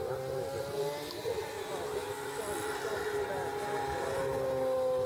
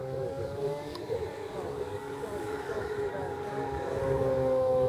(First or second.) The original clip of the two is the first